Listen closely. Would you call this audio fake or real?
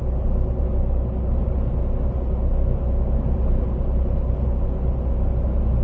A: real